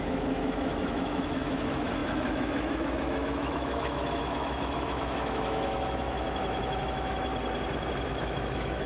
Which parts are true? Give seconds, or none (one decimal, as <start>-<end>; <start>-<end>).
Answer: 7.3-8.1